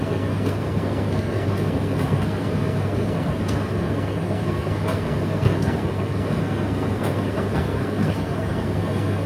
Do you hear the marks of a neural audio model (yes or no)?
yes